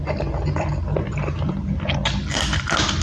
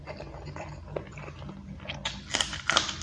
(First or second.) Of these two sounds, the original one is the second